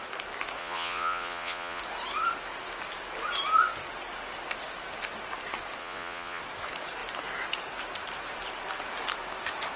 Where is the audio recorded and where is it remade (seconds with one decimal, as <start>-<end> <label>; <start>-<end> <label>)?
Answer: 0.0-0.6 recorded; 0.6-1.8 remade; 1.8-5.8 recorded; 5.8-6.4 remade; 6.4-9.8 recorded